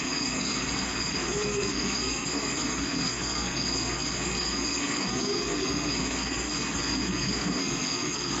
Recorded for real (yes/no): no